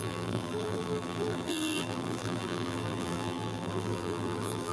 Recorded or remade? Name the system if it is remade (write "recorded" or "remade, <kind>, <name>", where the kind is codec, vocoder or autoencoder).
remade, vocoder, BigVGAN v2